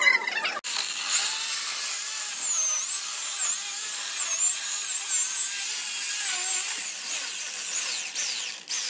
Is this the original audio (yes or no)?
yes